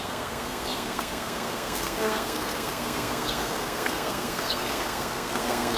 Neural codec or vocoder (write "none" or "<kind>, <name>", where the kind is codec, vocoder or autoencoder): codec, SNAC